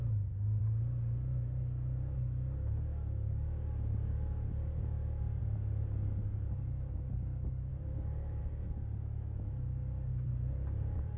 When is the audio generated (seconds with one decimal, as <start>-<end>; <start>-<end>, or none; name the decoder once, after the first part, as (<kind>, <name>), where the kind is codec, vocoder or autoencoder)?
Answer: 7.7-8.4 (vocoder, BigVGAN v2); 10.1-11.2